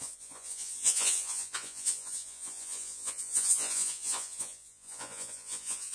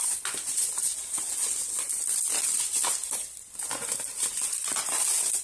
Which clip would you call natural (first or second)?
second